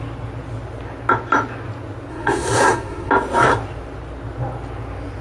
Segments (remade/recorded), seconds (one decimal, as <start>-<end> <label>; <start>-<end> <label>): 0.0-2.1 recorded; 2.1-3.1 remade; 3.1-5.2 recorded